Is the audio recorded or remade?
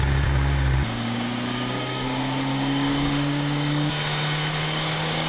remade